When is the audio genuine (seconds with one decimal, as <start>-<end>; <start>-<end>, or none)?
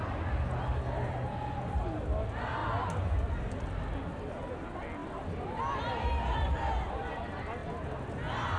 0.0-8.6